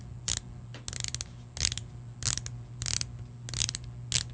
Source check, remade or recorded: recorded